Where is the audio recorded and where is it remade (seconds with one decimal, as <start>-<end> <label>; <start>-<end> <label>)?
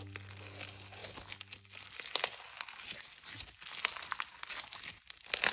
0.0-5.5 recorded